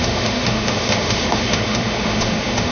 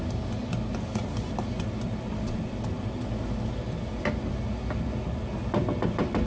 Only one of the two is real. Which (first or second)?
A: second